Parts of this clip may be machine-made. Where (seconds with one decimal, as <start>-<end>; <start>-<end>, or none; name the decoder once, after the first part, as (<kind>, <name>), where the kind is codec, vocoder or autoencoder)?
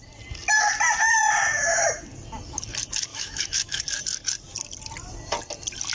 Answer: 3.1-3.8 (autoencoder, DAC-VAE)